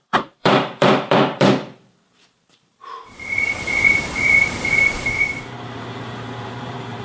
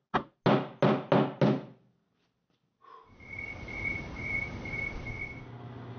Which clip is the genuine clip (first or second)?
second